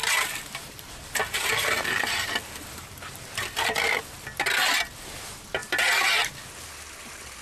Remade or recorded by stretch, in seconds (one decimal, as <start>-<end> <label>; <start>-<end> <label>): 0.0-4.0 remade; 4.0-7.4 recorded